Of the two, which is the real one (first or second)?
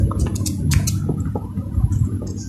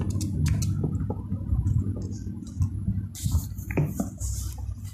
second